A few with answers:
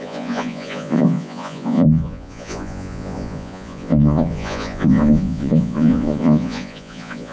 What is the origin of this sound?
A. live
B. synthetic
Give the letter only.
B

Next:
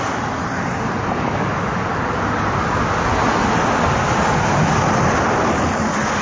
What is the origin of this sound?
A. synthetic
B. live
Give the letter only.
B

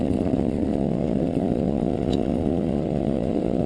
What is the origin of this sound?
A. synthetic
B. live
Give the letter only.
A